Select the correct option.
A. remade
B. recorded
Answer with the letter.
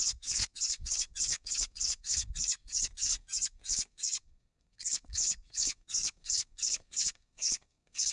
A